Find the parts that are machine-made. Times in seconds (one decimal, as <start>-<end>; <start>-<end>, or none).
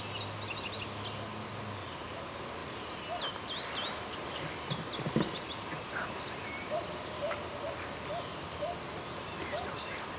2.6-7.4; 8.3-10.2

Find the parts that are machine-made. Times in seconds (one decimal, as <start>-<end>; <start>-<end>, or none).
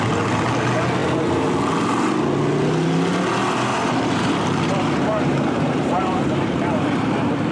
3.7-7.5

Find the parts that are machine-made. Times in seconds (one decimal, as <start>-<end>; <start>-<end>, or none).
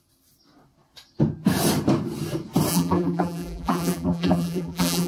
2.7-5.1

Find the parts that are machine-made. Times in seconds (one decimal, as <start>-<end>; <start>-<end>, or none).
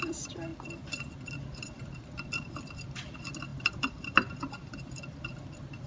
0.5-2.5; 3.5-4.3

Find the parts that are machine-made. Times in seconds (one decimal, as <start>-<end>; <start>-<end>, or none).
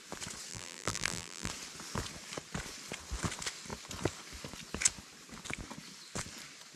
0.5-1.5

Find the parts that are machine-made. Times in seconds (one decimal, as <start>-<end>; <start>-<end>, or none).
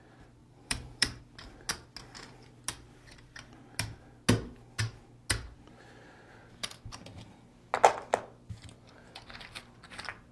0.4-1.2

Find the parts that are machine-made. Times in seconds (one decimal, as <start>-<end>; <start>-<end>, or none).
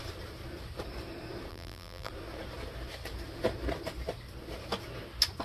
1.5-2.1